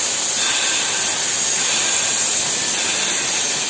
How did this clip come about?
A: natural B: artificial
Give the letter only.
A